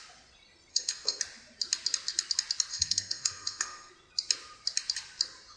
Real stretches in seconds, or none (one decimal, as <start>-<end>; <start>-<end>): 0.0-0.7; 1.2-2.7; 3.9-5.6

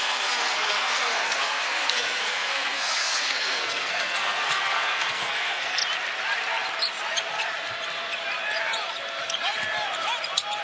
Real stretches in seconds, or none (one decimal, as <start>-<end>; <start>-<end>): 5.8-10.6

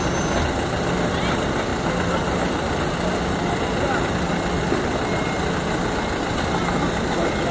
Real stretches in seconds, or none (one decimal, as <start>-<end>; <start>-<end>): 0.0-7.5

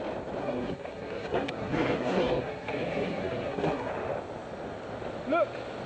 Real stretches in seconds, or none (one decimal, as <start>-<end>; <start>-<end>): 0.0-0.4; 3.9-5.9

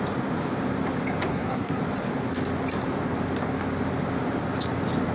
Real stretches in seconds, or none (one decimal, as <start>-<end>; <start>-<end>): 0.0-1.3; 1.8-5.1

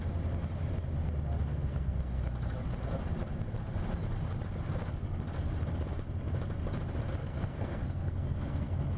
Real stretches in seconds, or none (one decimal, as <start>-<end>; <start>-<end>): 0.0-1.5; 2.3-7.2